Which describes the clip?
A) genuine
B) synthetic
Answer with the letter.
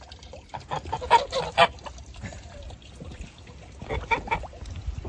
B